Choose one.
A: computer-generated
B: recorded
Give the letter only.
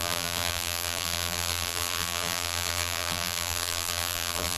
A